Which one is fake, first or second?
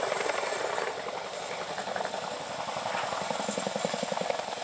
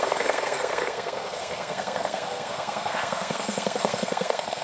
second